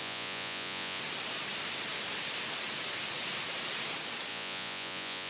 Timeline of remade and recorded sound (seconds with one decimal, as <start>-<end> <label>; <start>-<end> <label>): 0.0-1.0 remade; 1.0-4.3 recorded; 4.3-5.3 remade